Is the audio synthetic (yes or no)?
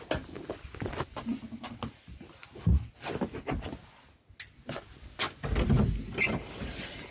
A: no